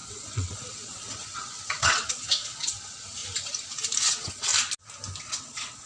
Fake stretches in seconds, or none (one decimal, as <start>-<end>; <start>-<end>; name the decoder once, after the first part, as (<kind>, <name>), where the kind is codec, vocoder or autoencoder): 0.0-3.2 (vocoder, WaveNeXt); 4.0-4.5; 5.2-5.9